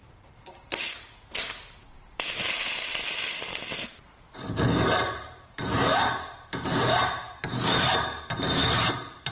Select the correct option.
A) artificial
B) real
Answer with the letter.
A